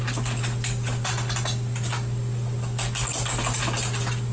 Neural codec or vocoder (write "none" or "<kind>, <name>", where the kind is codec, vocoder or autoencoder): none